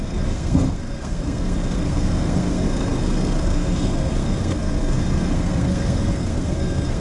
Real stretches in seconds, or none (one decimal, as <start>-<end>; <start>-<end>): none